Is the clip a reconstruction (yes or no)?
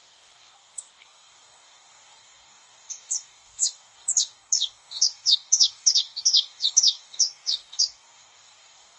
yes